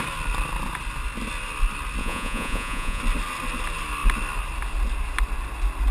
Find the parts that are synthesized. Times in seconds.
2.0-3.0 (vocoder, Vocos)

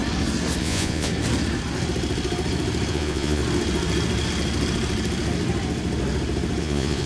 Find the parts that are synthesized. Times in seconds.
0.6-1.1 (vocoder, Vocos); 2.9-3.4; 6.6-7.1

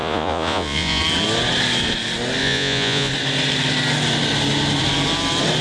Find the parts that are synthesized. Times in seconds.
0.0-1.0 (vocoder, Vocos); 2.4-3.1

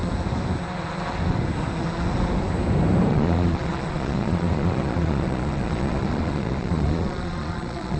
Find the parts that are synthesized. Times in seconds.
3.1-8.0 (vocoder, Vocos)

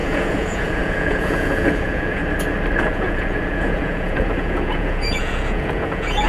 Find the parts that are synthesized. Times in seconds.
0.0-2.2 (vocoder, Vocos); 2.8-6.3

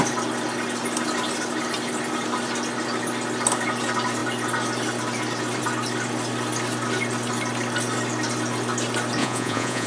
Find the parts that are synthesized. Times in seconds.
9.2-9.9 (vocoder, Vocos)

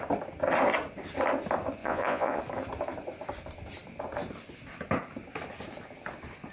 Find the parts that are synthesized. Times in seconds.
1.8-2.4 (vocoder, Vocos)

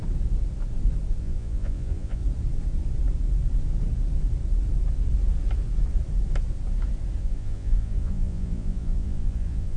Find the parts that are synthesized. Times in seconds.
1.2-2.2 (vocoder, Vocos); 7.2-9.8